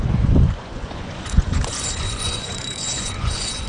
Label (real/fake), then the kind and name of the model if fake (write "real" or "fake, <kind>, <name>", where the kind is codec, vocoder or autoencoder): fake, vocoder, Vocos